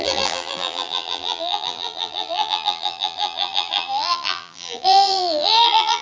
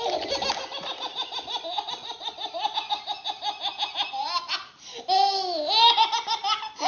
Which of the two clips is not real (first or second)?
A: first